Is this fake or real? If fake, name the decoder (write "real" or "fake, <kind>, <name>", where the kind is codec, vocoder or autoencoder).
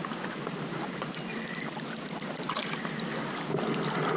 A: real